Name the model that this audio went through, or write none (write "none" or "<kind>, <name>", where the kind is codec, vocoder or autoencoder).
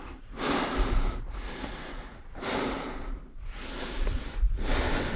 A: none